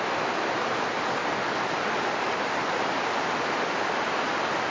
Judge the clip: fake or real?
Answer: real